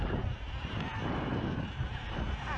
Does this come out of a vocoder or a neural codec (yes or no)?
no